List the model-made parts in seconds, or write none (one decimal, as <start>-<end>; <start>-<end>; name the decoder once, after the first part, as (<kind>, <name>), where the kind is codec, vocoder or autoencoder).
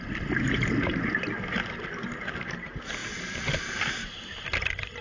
none